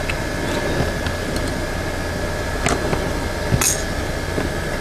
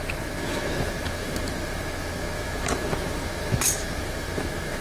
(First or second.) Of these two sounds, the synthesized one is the second